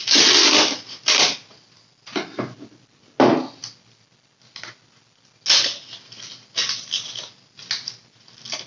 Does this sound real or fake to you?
real